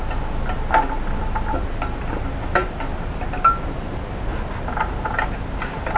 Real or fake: real